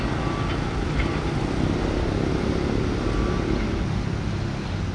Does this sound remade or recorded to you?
recorded